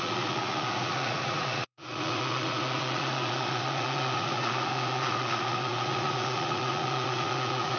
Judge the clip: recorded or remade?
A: remade